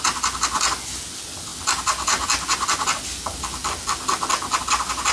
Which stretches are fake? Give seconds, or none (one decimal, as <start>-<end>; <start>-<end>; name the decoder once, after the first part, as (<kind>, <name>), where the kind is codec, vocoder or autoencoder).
none